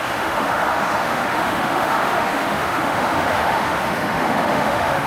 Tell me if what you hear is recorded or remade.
remade